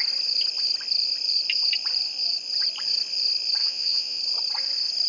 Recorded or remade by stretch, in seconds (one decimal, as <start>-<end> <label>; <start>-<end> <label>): 0.0-3.6 recorded; 3.6-4.2 remade; 4.2-5.1 recorded